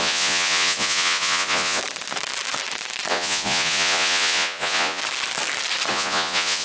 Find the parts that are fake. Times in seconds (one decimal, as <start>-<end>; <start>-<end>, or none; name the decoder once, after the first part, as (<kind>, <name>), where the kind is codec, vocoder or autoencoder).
0.0-1.8 (vocoder, Vocos); 3.1-5.0; 5.9-6.6